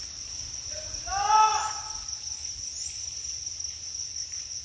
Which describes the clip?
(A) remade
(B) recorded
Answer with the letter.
B